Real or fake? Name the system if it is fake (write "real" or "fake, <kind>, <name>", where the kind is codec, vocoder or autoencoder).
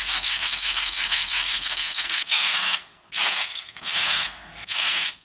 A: fake, codec, SNAC